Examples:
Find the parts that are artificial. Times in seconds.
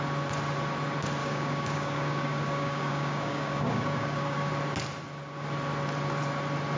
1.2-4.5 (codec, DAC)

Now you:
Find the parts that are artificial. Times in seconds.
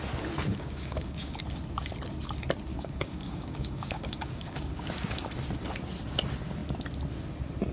0.5-1.4 (codec, DAC); 2.7-4.9